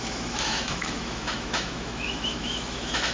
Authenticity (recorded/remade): remade